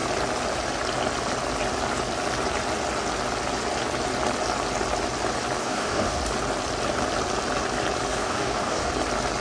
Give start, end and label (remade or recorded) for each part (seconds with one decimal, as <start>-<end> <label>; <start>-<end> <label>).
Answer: 0.0-5.6 recorded; 5.6-6.2 remade; 6.2-8.1 recorded; 8.1-8.9 remade; 8.9-9.4 recorded

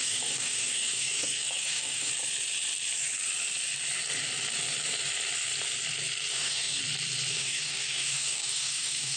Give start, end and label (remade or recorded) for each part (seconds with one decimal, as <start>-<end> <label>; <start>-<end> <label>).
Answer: 0.0-2.1 remade; 2.1-6.3 recorded; 6.3-6.8 remade; 6.8-7.3 recorded; 7.3-9.2 remade

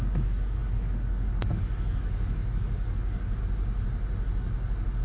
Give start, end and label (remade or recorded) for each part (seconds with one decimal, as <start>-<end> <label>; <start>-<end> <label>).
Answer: 0.0-3.4 remade; 3.4-5.0 recorded

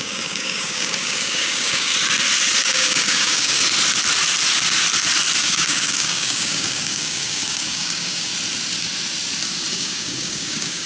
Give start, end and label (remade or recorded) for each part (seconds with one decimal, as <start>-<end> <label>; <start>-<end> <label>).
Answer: 0.0-1.9 remade; 1.9-2.6 recorded; 2.6-3.6 remade; 3.6-5.4 recorded; 5.4-8.3 remade; 8.3-9.7 recorded; 9.7-10.9 remade

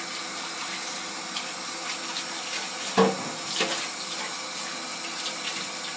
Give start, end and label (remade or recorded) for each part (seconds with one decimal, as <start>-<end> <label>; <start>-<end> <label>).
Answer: 0.0-6.0 recorded

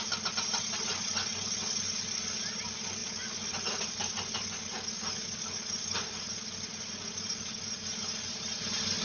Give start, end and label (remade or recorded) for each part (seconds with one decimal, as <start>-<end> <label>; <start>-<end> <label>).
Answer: 0.0-9.0 recorded